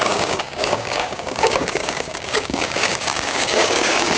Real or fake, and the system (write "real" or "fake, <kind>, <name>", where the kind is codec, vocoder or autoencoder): fake, codec, DAC